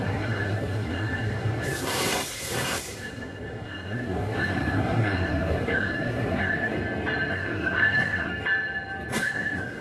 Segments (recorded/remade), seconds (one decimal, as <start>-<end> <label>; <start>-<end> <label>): 0.0-6.7 remade; 6.7-7.3 recorded; 7.3-8.3 remade; 8.3-9.1 recorded; 9.1-9.8 remade